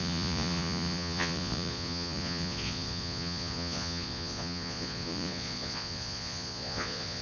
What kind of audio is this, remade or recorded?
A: remade